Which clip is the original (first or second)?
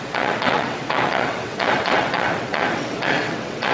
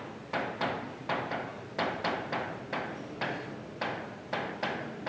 second